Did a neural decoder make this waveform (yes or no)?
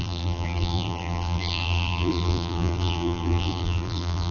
yes